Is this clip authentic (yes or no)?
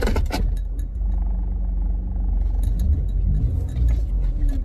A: yes